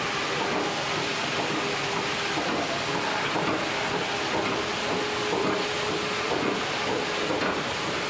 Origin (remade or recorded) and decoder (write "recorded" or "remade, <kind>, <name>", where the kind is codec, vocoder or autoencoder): recorded